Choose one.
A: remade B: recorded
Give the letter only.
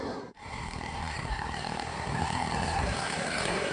A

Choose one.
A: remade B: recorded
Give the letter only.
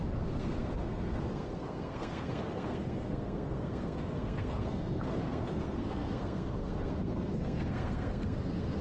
A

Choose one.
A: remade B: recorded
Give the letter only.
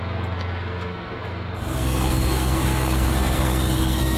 A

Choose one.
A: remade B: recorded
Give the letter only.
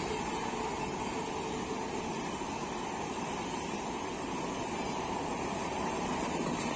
B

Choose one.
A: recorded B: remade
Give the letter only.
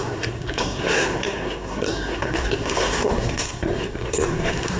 B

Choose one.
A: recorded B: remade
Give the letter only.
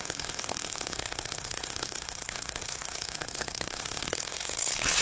B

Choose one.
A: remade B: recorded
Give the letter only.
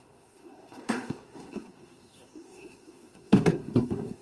A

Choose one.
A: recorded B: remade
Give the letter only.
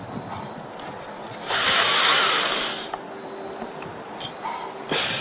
A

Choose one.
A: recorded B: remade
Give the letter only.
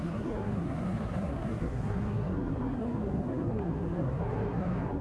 B